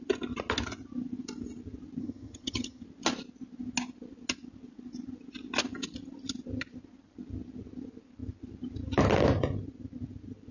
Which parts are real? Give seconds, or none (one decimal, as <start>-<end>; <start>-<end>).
0.0-2.0; 2.8-10.5